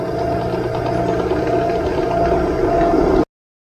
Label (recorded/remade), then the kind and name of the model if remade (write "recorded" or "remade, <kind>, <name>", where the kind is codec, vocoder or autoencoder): recorded